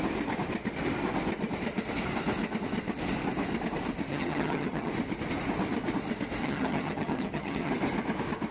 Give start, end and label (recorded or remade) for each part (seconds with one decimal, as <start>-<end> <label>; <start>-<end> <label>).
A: 0.0-4.1 recorded; 4.1-4.9 remade; 4.9-6.4 recorded; 6.4-7.7 remade; 7.7-8.5 recorded